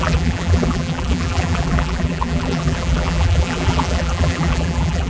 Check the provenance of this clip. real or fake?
fake